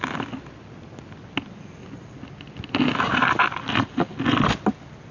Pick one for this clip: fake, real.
real